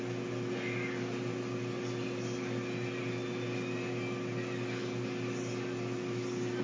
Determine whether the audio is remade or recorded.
recorded